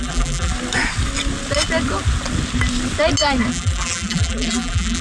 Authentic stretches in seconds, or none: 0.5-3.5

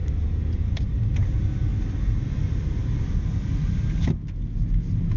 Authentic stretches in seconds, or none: 0.0-5.2